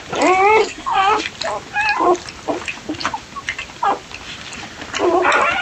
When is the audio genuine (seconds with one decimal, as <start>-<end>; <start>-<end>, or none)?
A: 0.0-0.6; 1.2-5.6